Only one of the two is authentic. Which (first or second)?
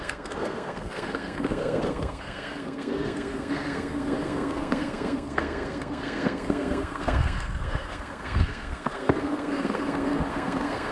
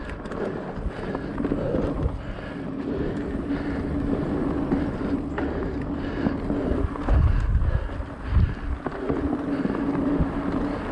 second